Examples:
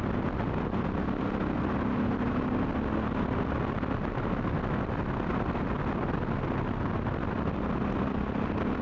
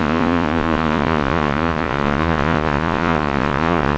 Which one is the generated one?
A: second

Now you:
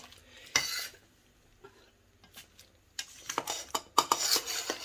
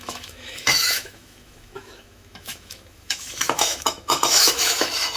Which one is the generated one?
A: second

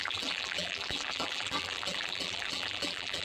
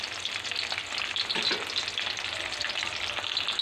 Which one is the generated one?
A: first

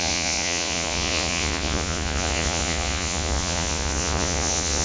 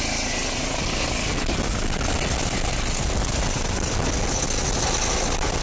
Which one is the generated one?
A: first